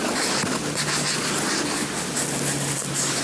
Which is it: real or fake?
real